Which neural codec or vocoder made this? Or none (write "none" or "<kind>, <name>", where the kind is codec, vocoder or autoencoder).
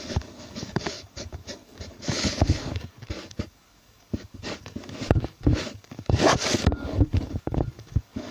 codec, DAC